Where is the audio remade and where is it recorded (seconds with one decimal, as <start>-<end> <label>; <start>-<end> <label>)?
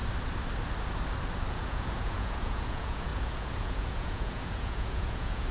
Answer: 0.0-1.5 recorded; 1.5-5.5 remade